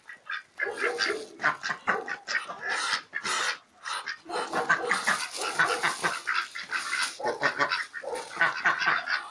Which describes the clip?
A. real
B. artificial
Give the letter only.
A